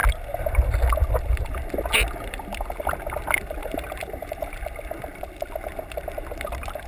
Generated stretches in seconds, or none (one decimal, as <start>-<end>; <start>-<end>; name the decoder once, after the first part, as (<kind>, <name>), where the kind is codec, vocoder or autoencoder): 3.6-4.5 (vocoder, BigVGAN v2)